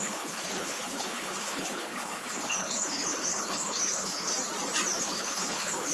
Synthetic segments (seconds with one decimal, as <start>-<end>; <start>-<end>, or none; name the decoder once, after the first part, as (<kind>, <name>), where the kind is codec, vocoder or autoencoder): 0.0-4.3 (codec, HILCodec); 5.0-5.9